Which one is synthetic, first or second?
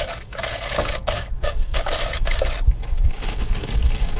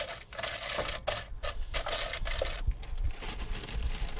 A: first